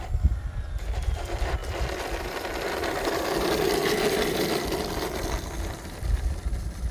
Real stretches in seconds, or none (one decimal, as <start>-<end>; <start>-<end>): 1.6-3.1; 3.8-6.9